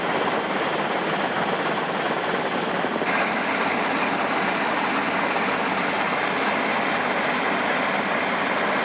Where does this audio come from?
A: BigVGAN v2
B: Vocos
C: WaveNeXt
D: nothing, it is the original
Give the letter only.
D